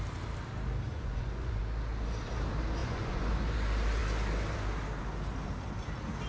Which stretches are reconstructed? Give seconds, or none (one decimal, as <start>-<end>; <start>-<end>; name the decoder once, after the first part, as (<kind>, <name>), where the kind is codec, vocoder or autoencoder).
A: 0.9-1.6 (vocoder, Vocos); 2.8-3.3